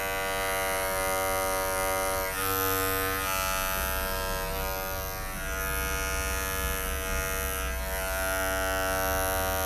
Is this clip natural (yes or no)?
yes